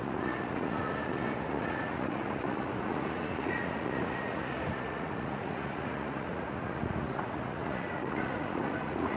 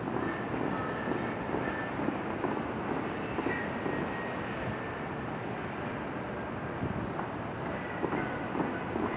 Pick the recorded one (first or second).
second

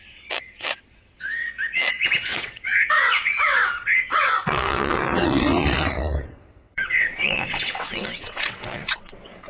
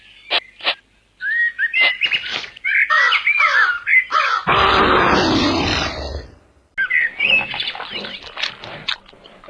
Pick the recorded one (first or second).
second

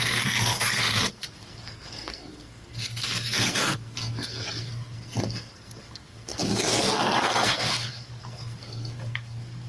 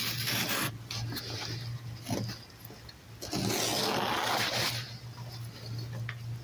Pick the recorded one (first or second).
second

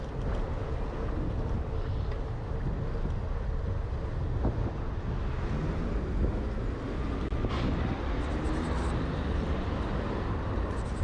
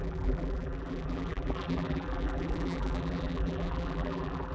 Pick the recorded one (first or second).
first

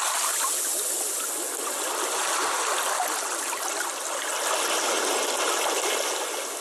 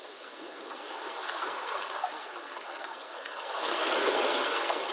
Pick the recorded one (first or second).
first